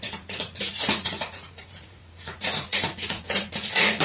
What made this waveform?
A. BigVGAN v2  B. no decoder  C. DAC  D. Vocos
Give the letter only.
D